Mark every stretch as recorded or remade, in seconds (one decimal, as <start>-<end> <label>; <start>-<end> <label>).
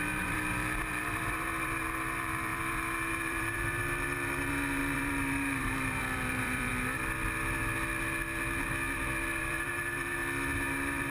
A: 0.0-6.7 remade; 6.7-9.4 recorded; 9.4-10.2 remade; 10.2-10.7 recorded; 10.7-11.1 remade